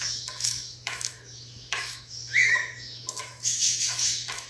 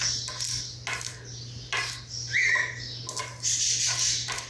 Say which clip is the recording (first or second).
second